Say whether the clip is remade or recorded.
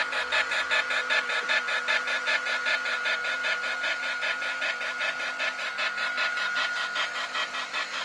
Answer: recorded